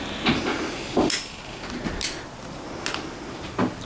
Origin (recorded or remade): recorded